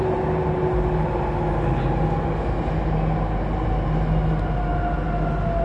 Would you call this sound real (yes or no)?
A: yes